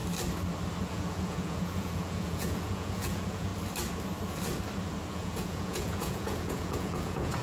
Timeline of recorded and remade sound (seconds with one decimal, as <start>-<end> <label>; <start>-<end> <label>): 0.0-0.8 recorded; 0.8-3.5 remade; 3.5-5.1 recorded; 5.1-7.4 remade